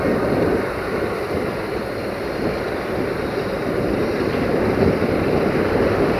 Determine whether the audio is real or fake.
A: real